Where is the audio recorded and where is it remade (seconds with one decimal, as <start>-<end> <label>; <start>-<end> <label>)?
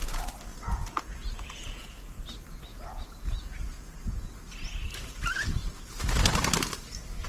0.0-0.5 recorded; 0.5-2.2 remade; 2.2-2.7 recorded; 2.7-4.3 remade; 4.3-7.3 recorded